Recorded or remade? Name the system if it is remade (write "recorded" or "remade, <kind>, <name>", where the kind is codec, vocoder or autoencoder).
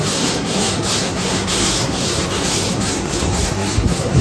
remade, codec, SNAC